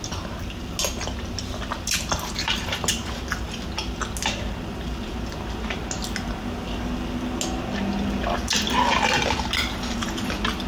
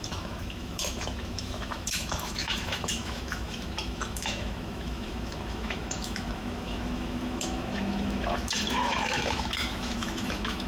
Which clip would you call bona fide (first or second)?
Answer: first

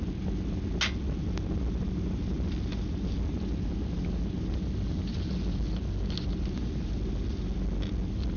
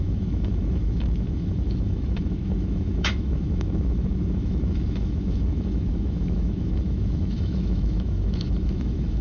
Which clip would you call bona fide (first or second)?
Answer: first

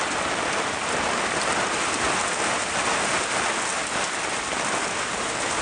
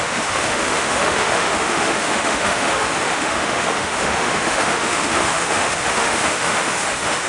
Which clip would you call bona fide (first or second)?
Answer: first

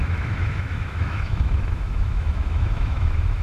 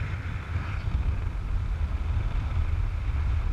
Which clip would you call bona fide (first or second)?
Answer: second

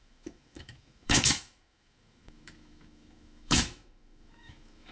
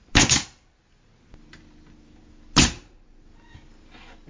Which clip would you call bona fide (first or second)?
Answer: second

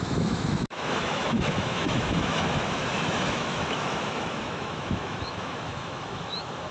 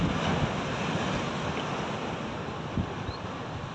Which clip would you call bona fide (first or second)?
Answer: second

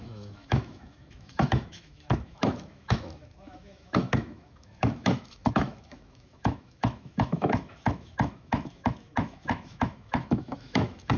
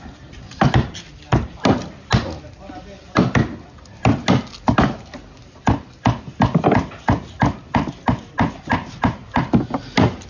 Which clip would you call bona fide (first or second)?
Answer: second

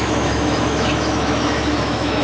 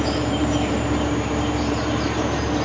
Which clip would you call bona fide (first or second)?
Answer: second